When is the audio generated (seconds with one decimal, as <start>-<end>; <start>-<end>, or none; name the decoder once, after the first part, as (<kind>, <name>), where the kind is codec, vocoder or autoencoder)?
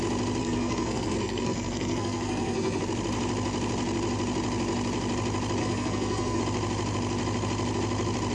0.4-2.8 (codec, SNAC); 5.6-6.4